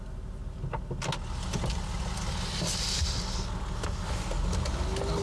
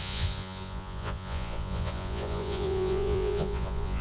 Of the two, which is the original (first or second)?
first